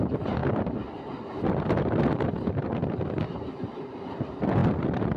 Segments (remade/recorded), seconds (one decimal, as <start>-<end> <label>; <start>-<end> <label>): 0.0-5.2 recorded